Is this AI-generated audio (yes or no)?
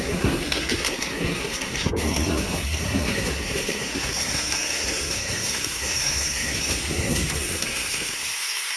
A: yes